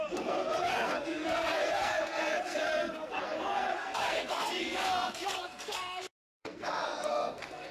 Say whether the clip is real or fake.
fake